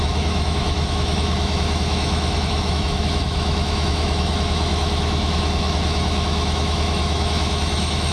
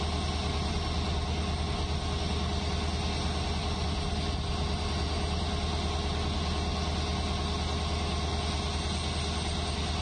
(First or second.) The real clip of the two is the second